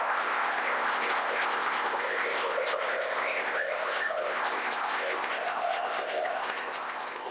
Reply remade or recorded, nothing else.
remade